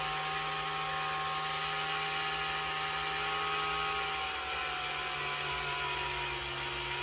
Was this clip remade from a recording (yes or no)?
no